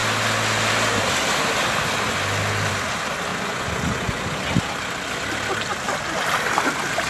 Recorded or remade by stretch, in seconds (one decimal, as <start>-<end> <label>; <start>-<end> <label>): 0.0-3.3 recorded; 3.3-4.2 remade; 4.2-7.1 recorded